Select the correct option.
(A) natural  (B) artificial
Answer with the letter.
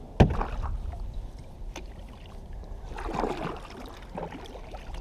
A